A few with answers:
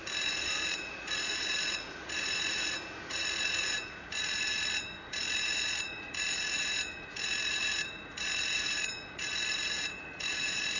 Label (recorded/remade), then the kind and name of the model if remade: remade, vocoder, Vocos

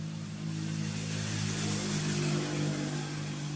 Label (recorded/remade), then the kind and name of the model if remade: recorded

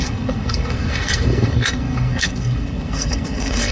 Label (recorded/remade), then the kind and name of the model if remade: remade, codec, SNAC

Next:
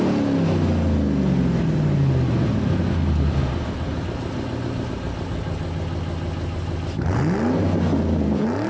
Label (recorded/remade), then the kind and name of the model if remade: recorded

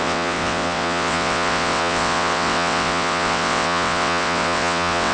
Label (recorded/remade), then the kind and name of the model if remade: remade, vocoder, WaveNeXt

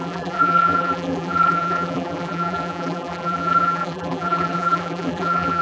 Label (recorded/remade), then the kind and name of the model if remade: remade, vocoder, BigVGAN v2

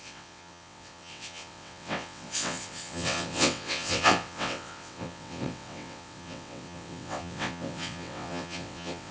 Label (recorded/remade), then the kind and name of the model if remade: remade, vocoder, WaveNeXt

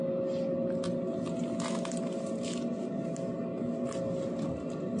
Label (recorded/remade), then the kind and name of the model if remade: recorded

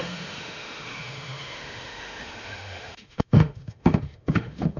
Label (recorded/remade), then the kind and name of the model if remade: remade, autoencoder, DAC-VAE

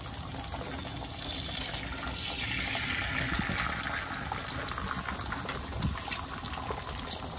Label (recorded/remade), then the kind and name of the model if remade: recorded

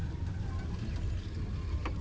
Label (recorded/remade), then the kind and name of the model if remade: recorded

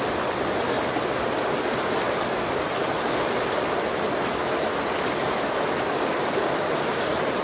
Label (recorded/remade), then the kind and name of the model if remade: recorded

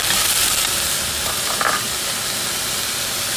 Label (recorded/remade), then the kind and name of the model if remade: recorded